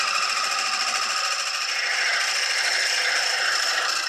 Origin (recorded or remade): recorded